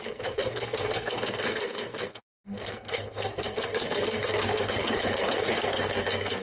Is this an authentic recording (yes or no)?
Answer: no